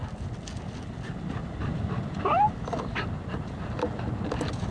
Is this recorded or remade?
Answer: recorded